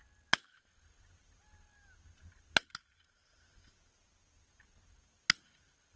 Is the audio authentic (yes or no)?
yes